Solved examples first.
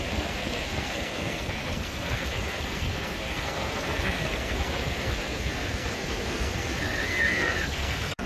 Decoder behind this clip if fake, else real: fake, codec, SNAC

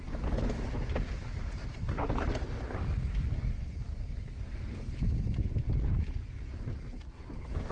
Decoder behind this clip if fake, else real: real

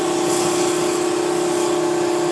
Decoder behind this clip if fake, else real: real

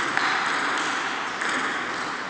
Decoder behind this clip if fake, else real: real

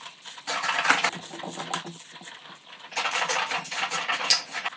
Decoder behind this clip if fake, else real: real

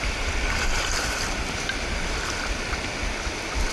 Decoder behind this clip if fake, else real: real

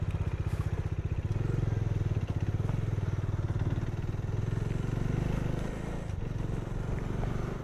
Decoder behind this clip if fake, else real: real